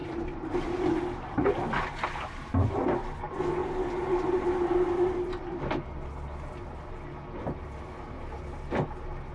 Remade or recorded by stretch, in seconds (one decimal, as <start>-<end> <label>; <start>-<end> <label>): 0.0-2.8 remade; 2.8-3.6 recorded; 3.6-5.6 remade; 5.6-9.3 recorded